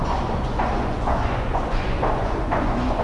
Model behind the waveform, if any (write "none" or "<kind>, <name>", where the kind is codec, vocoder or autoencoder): vocoder, Vocos